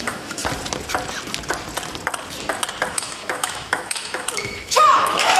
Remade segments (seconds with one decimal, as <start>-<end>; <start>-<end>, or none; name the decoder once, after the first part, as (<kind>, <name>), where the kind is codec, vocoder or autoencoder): 0.0-0.4 (autoencoder, DAC-VAE); 2.9-5.4